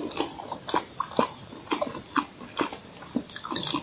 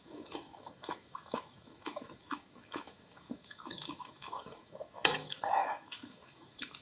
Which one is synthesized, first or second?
second